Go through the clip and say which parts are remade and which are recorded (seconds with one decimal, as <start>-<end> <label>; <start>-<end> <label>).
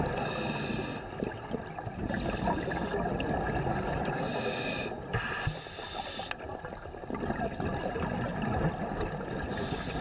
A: 0.0-10.0 recorded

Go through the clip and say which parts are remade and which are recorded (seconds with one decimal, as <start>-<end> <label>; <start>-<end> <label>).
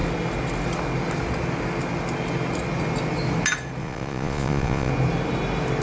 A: 0.0-3.8 recorded; 3.8-4.9 remade; 4.9-5.8 recorded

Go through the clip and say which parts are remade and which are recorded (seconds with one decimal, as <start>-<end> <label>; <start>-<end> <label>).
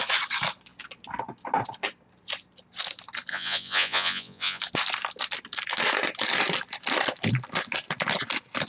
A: 0.0-3.3 recorded; 3.3-4.6 remade; 4.6-8.7 recorded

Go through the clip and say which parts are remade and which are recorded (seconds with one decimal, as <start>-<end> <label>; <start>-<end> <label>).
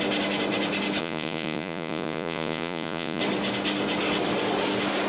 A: 0.0-1.0 recorded; 1.0-3.2 remade; 3.2-5.1 recorded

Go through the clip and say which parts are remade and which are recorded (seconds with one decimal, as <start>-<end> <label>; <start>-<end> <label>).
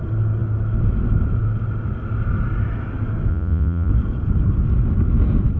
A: 0.0-3.3 recorded; 3.3-3.9 remade; 3.9-5.6 recorded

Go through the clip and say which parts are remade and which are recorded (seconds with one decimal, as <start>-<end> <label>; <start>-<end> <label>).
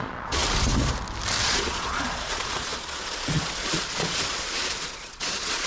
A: 0.0-0.4 remade; 0.4-1.4 recorded; 1.4-5.7 remade